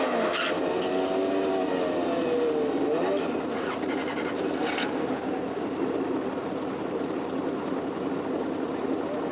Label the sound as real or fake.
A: fake